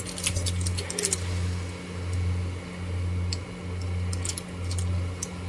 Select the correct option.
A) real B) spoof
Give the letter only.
A